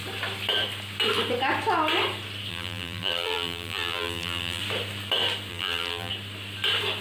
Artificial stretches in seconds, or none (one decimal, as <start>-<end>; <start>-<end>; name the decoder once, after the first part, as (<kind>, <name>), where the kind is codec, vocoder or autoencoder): 2.5-4.6 (vocoder, BigVGAN v2); 5.5-6.1